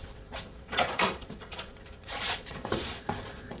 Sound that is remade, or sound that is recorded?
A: remade